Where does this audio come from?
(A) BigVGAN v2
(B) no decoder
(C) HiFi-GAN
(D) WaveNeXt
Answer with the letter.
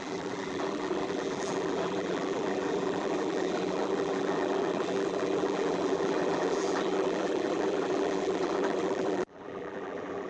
A